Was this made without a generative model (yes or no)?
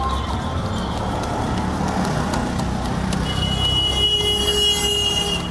yes